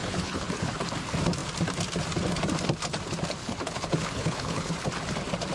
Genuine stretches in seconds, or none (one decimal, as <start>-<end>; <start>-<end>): 0.7-3.4; 4.7-5.5